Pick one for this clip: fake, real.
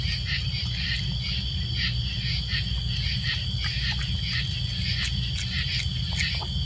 real